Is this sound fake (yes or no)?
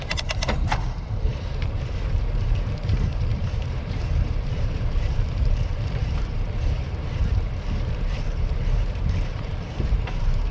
yes